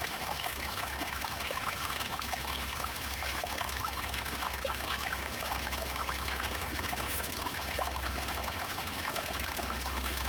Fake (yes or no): yes